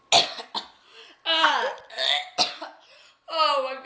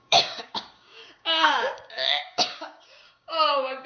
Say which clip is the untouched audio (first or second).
first